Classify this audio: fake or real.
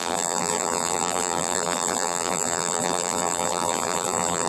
fake